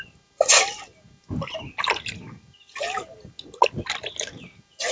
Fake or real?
real